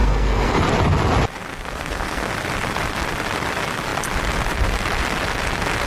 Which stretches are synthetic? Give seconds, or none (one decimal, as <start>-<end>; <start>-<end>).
0.0-0.6; 1.5-2.3